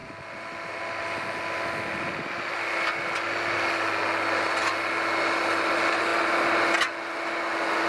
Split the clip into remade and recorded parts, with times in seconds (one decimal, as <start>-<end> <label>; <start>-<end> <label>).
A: 0.0-7.9 recorded